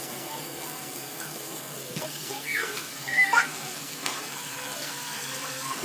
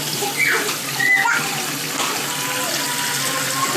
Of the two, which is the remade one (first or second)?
first